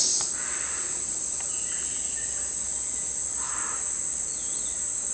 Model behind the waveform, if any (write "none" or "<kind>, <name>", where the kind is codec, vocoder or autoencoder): none